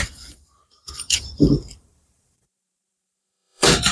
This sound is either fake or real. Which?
fake